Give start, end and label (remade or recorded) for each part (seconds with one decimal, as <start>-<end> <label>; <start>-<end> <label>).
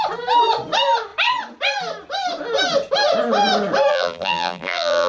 0.0-3.9 recorded; 3.9-5.1 remade